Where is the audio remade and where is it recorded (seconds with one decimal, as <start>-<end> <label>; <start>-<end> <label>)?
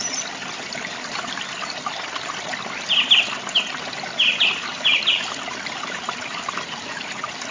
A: 0.0-4.7 recorded; 4.7-7.1 remade; 7.1-7.5 recorded